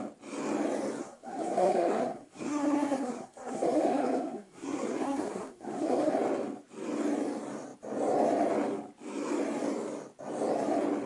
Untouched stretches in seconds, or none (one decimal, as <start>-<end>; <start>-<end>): 0.0-1.0; 6.1-11.1